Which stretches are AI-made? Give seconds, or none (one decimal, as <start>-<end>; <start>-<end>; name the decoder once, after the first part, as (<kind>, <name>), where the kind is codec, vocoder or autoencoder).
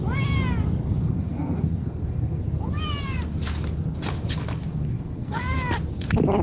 1.0-2.4 (codec, SNAC); 4.7-5.4